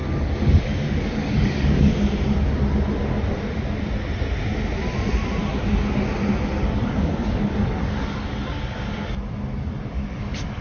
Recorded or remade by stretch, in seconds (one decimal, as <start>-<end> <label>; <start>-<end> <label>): 0.0-0.6 recorded; 0.6-1.9 remade; 1.9-6.7 recorded; 6.7-10.6 remade